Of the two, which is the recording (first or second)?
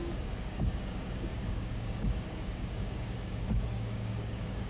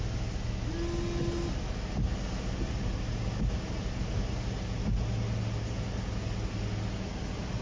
second